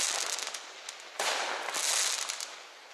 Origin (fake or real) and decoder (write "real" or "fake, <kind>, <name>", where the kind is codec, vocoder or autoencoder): real